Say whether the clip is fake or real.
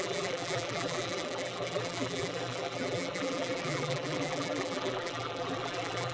fake